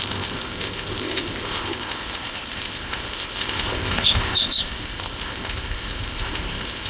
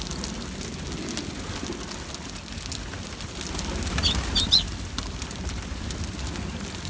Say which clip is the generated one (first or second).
first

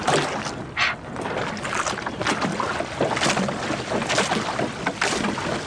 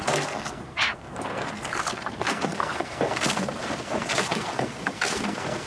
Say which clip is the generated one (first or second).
second